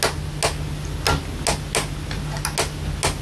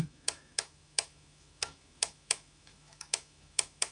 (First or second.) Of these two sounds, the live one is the first